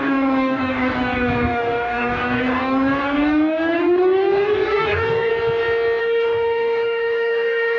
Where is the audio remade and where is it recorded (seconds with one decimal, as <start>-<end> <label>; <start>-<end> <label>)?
0.0-5.3 remade; 5.3-6.0 recorded; 6.0-7.8 remade